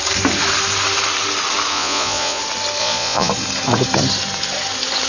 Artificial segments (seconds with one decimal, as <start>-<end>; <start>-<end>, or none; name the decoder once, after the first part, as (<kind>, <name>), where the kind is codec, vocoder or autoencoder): 1.7-2.4 (vocoder, Vocos); 2.8-3.3